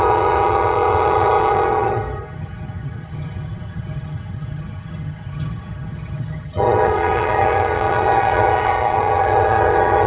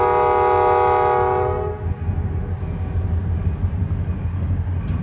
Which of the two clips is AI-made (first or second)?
first